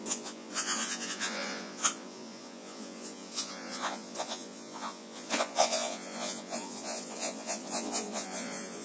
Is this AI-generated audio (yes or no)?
yes